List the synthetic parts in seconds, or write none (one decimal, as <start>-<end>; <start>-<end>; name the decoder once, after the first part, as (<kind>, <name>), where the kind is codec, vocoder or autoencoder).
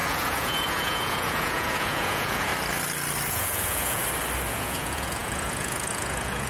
0.0-2.5 (vocoder, Vocos); 3.3-4.0; 4.5-6.5